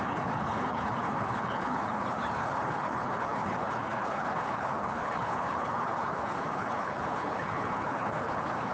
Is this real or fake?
fake